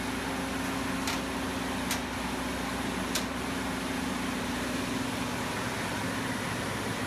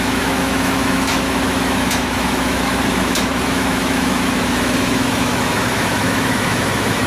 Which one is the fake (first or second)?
second